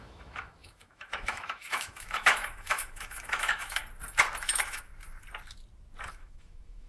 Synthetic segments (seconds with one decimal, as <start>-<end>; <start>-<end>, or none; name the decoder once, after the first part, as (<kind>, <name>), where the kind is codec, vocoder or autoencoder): 0.0-3.8 (autoencoder, DAC-VAE); 4.4-4.9; 6.1-6.9